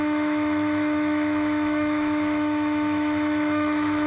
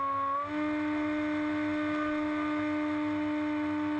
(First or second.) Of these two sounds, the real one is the second